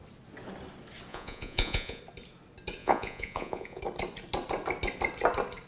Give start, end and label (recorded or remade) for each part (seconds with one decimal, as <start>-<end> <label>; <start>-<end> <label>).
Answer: 0.0-1.1 recorded; 1.1-2.0 remade; 2.0-2.8 recorded; 2.8-3.8 remade; 3.8-5.7 recorded